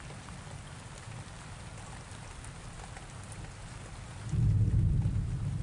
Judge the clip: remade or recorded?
recorded